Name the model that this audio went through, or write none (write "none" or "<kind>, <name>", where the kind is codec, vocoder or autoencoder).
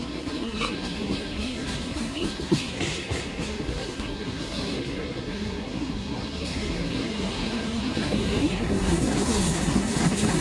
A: codec, SNAC